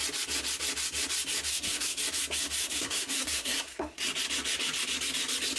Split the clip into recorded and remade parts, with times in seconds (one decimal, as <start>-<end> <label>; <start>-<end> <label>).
0.0-1.5 recorded; 1.5-2.0 remade; 2.0-2.6 recorded; 2.6-4.0 remade; 4.0-5.6 recorded